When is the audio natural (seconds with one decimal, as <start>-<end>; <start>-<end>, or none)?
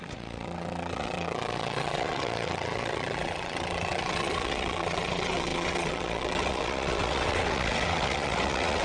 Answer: none